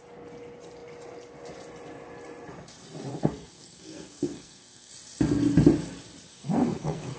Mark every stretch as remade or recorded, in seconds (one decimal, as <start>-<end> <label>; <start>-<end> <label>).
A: 0.0-3.1 recorded; 3.1-4.9 remade; 4.9-6.3 recorded; 6.3-7.2 remade